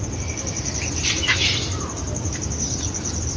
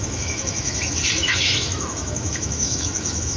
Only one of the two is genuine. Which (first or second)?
first